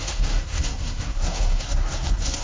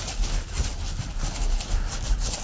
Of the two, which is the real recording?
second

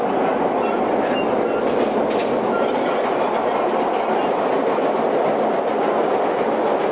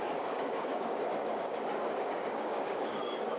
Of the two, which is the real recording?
first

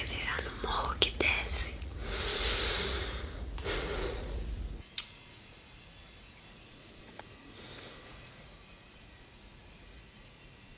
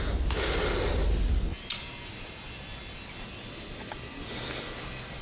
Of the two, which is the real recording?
second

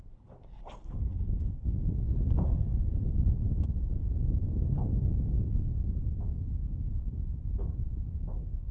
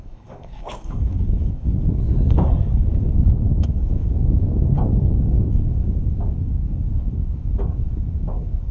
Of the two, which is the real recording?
first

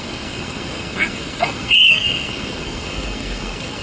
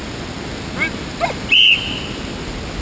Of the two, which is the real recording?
second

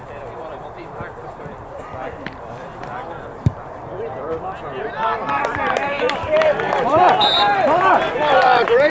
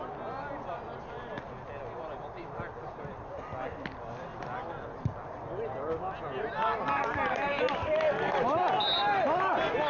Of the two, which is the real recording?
second